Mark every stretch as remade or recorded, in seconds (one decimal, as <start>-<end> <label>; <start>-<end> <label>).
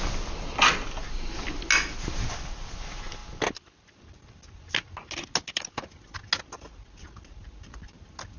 0.0-8.4 recorded